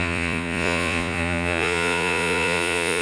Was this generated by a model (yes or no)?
yes